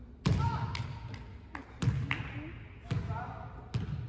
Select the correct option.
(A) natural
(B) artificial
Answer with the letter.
A